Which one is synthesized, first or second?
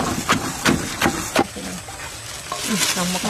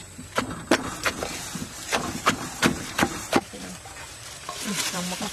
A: second